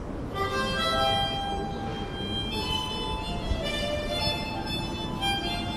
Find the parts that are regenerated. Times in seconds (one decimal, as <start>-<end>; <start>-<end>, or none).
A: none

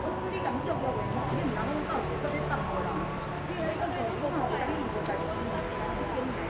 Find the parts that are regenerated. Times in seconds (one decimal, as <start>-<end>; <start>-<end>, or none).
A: none

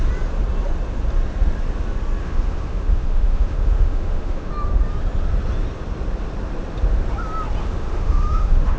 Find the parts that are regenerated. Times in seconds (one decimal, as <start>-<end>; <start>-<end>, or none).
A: 2.2-4.5; 7.6-8.8

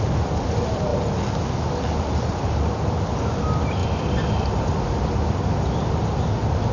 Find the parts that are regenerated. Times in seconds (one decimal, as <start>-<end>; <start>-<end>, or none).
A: 0.0-0.9; 2.2-3.8; 5.7-6.7

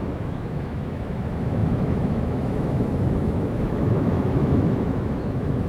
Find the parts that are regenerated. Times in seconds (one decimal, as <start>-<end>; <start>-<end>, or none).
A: 0.0-5.7

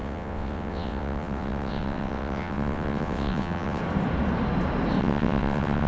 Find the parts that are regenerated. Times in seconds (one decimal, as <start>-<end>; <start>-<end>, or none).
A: 0.0-3.8; 5.0-5.9

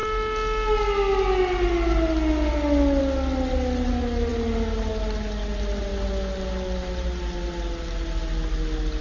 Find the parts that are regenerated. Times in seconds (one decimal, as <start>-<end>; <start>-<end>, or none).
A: none